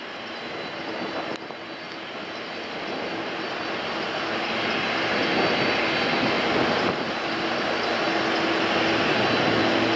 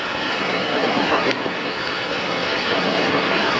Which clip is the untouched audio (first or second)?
first